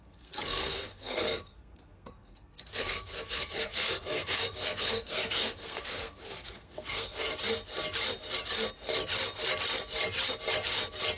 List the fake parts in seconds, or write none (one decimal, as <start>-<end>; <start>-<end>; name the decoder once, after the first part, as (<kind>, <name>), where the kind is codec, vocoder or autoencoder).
0.0-7.3 (codec, SNAC)